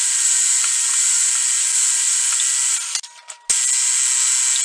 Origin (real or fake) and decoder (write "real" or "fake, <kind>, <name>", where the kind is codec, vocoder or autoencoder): real